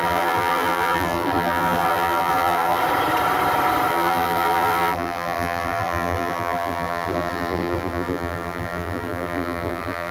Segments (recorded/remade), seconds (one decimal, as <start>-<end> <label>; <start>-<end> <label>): 0.0-2.8 remade; 2.8-3.9 recorded; 3.9-10.1 remade